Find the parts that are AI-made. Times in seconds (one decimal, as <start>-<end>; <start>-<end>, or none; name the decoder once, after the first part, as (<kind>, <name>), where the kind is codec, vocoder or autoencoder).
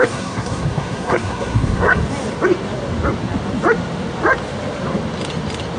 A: 0.0-2.0 (codec, SNAC)